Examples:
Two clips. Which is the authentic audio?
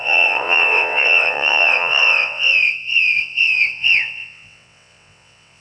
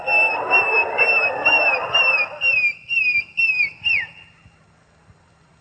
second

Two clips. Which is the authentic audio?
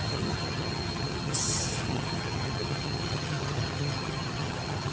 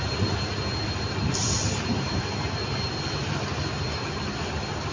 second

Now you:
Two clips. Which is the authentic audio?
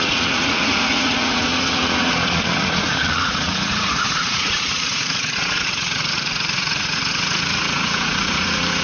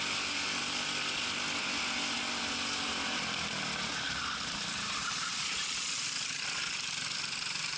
second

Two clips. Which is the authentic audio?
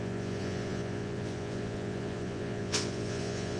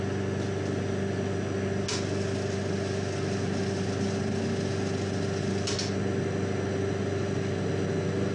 second